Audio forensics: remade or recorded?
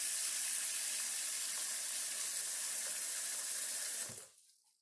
recorded